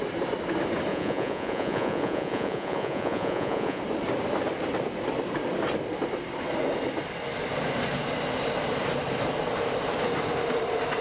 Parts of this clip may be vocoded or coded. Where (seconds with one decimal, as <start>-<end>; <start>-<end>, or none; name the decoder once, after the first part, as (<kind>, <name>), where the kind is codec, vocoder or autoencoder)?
0.9-3.8 (vocoder, Vocos)